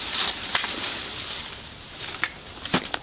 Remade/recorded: remade